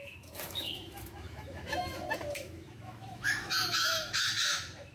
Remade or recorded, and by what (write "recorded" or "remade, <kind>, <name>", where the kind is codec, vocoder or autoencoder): remade, autoencoder, DAC-VAE